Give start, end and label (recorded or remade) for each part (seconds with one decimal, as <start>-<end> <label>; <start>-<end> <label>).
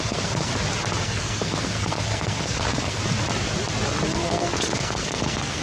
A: 0.0-0.5 remade; 0.5-1.0 recorded; 1.0-3.0 remade; 3.0-4.1 recorded; 4.1-5.6 remade